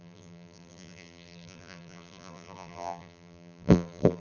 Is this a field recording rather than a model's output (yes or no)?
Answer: no